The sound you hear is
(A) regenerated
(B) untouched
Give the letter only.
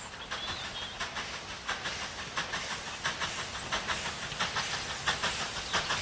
B